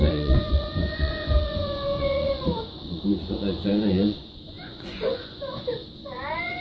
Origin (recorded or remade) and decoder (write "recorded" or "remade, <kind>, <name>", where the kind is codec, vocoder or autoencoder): remade, vocoder, Vocos